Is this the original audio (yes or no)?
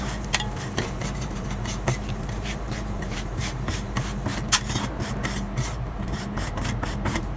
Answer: no